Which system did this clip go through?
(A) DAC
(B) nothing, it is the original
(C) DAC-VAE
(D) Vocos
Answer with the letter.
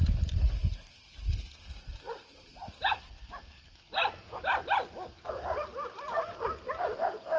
B